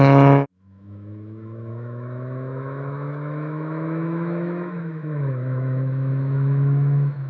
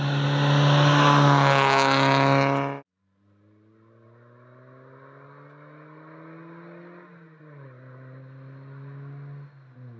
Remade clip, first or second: first